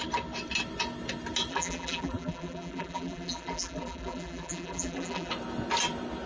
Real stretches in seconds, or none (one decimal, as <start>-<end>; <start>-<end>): 0.0-1.5; 5.3-6.3